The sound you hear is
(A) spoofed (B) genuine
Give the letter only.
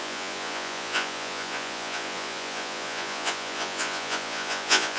A